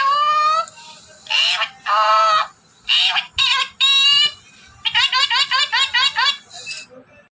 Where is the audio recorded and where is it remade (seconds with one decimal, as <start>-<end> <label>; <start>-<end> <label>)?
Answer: 0.0-7.3 recorded